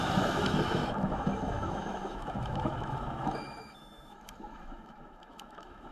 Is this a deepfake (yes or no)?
yes